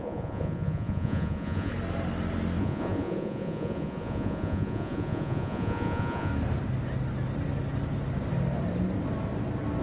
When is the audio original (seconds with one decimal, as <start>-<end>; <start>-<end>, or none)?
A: 1.7-2.6; 6.3-9.8